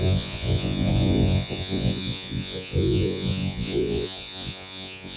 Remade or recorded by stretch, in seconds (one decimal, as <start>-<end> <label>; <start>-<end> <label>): 0.0-5.2 remade